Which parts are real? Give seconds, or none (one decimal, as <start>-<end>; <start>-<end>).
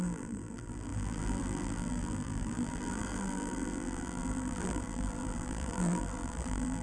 none